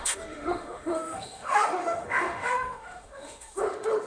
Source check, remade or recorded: remade